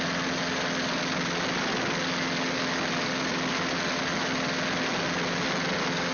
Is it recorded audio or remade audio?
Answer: recorded